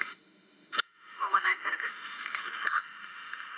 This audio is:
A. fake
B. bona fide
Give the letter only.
A